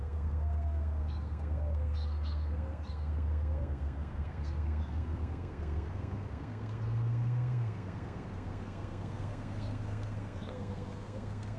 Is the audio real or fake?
fake